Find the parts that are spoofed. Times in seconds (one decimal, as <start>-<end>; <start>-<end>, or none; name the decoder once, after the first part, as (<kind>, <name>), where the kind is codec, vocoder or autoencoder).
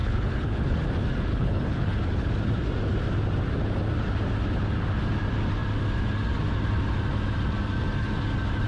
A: 0.0-0.8 (codec, HILCodec); 1.3-2.3